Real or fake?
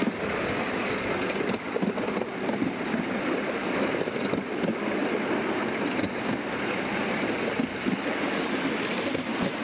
real